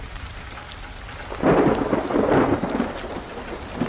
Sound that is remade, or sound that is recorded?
recorded